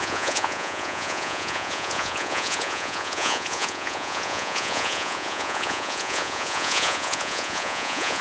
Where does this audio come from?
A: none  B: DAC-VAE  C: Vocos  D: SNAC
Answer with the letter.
C